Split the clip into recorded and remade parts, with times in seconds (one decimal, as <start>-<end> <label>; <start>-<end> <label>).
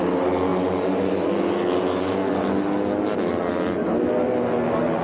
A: 0.0-5.0 recorded